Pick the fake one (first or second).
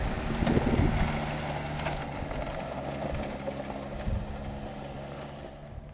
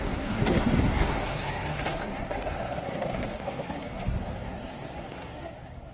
second